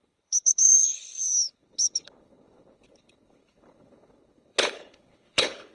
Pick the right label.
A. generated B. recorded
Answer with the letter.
A